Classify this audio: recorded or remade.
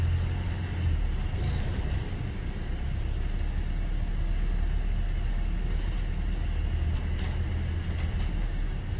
recorded